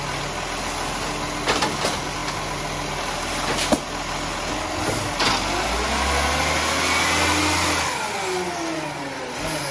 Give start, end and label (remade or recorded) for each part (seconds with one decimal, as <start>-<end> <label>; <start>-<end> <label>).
0.0-9.7 recorded